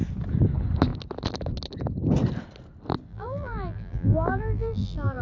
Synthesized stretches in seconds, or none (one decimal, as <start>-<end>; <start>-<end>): 3.1-5.2